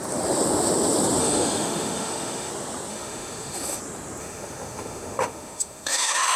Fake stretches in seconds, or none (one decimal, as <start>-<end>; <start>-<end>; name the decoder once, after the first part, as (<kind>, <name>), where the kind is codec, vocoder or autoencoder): 1.2-2.5 (autoencoder, DAC-VAE); 2.9-3.8; 4.2-6.4